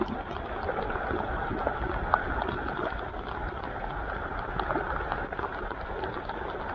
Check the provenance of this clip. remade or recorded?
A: recorded